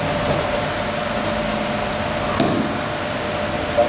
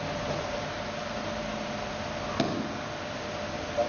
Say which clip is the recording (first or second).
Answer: first